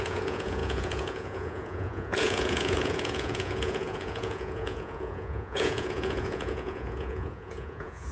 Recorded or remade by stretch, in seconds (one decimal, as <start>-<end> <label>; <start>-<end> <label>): 0.0-8.1 remade